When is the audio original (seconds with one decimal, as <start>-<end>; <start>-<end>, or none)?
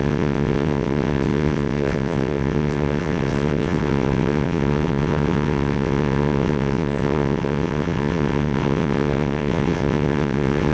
none